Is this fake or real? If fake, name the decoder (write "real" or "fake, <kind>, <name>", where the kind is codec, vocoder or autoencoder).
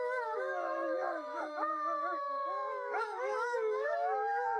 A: fake, autoencoder, DAC-VAE